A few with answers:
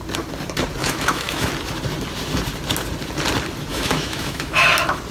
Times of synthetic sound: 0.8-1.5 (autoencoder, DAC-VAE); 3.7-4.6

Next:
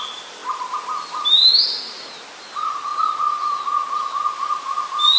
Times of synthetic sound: none

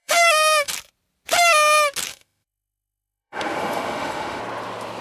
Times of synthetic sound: 0.0-0.7 (autoencoder, DAC-VAE); 2.1-4.4

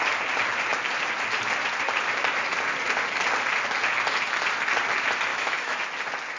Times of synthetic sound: 5.3-5.8 (autoencoder, DAC-VAE)

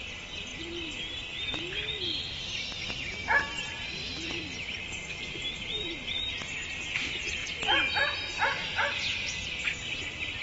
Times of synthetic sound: none

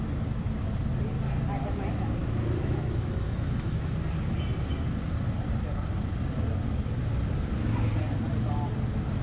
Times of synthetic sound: 2.2-3.9 (autoencoder, DAC-VAE)

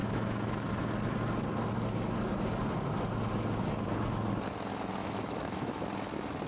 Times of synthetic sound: 0.0-0.7 (autoencoder, DAC-VAE); 5.0-5.8

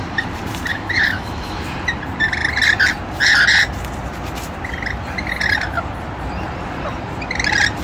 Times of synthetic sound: 0.7-1.6 (autoencoder, DAC-VAE)